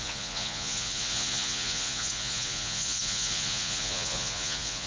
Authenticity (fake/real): fake